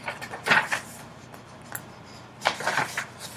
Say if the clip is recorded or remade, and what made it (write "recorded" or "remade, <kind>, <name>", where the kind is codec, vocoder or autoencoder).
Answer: recorded